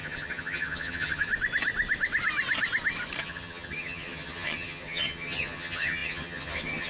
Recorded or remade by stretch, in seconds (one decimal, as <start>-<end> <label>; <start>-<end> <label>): 0.0-1.3 remade; 1.3-3.2 recorded; 3.2-6.9 remade